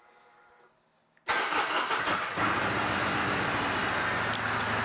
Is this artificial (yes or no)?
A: no